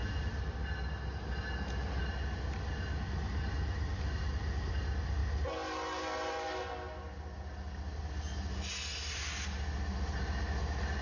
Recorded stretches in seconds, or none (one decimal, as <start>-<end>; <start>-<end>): 0.0-11.0

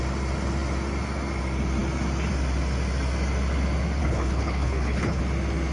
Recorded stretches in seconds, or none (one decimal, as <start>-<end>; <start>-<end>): 0.0-4.0; 5.2-5.7

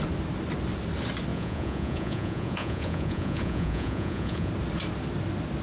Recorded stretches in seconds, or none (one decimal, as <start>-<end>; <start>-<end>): 0.0-1.3; 4.5-5.6

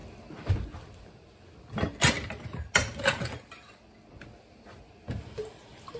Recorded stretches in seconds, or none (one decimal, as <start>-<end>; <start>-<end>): 0.0-2.8; 3.5-6.0

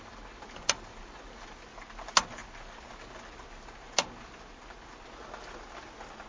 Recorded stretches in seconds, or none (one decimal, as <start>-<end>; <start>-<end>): 0.0-6.3

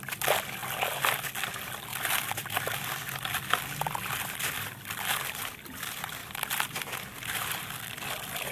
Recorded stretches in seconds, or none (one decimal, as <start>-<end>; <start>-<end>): 0.0-8.5